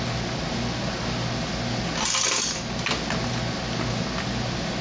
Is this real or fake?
real